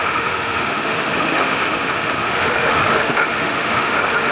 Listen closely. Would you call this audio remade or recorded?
remade